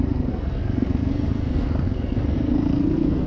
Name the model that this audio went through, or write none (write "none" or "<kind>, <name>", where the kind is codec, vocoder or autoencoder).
codec, SNAC